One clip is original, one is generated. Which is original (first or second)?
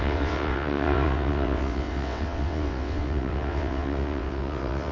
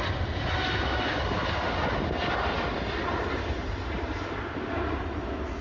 second